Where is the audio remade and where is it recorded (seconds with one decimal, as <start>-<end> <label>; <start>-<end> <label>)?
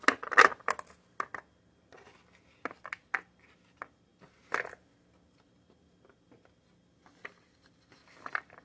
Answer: 0.0-8.6 recorded